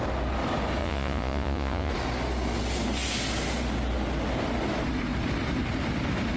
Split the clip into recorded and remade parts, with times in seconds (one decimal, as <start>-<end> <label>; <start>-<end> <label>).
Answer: 0.0-0.8 recorded; 0.8-1.9 remade; 1.9-6.4 recorded